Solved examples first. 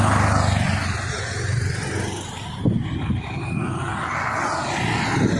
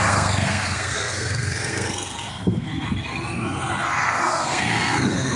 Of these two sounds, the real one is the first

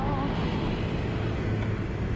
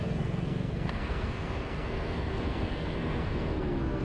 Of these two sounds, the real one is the first